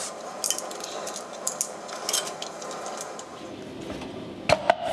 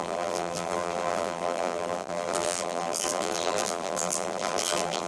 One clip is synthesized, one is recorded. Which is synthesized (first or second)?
second